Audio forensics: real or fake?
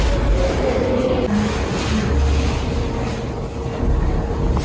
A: real